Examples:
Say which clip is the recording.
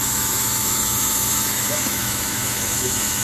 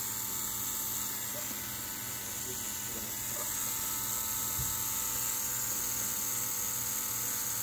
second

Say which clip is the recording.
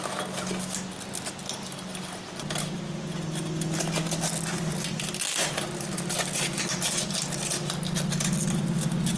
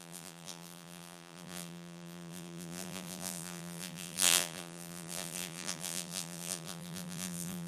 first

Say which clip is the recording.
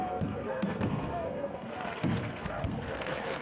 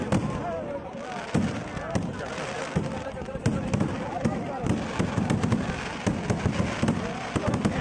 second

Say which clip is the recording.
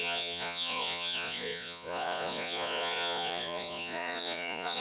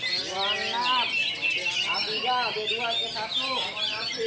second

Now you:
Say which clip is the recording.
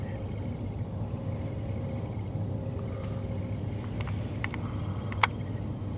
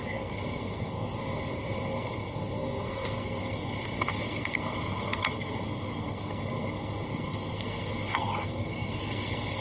first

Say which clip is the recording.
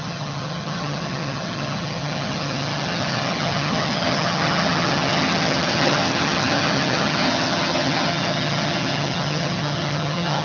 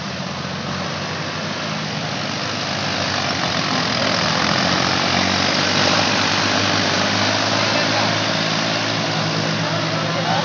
second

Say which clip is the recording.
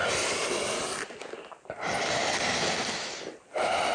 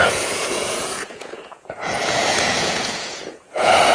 first